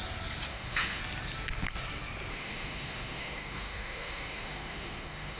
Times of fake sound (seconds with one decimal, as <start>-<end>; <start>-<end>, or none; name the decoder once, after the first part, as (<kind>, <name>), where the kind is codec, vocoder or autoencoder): 0.5-1.0 (autoencoder, DAC-VAE); 2.3-5.4